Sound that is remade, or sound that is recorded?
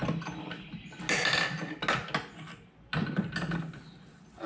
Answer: recorded